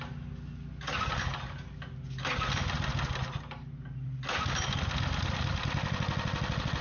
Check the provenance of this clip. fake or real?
real